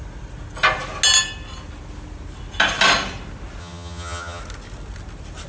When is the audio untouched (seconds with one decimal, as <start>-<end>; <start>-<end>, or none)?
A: 0.0-3.6; 4.4-5.5